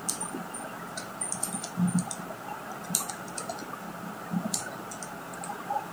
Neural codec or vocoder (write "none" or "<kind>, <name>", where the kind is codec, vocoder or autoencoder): none